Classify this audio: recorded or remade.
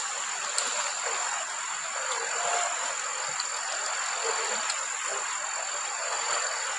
recorded